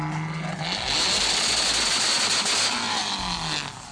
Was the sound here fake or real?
real